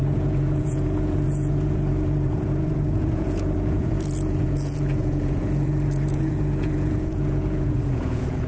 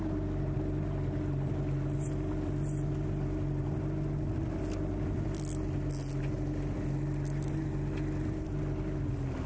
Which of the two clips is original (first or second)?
second